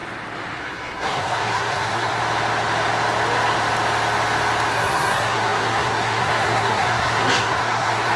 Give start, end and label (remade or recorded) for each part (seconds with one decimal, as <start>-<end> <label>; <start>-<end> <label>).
0.0-0.6 recorded; 0.6-2.2 remade; 2.2-4.7 recorded; 4.7-8.2 remade